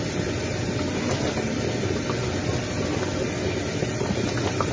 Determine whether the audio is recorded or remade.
recorded